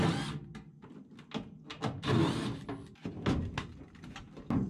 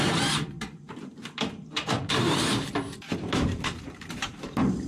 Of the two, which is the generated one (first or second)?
second